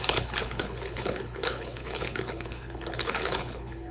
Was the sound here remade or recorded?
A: remade